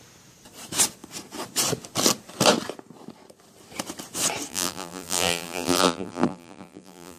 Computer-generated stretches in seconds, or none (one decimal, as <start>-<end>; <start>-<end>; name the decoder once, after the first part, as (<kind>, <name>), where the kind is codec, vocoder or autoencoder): 4.5-7.2 (vocoder, BigVGAN v2)